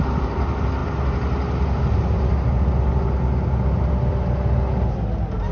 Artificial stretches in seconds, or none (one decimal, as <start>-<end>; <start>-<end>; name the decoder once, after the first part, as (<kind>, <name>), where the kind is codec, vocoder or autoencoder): none